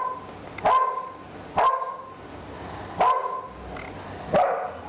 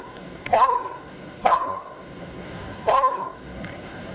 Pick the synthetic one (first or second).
second